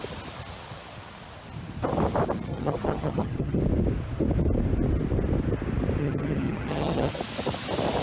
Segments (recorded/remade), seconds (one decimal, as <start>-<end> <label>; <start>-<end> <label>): 0.0-2.5 recorded; 2.5-3.6 remade; 3.6-6.0 recorded; 6.0-7.1 remade; 7.1-8.0 recorded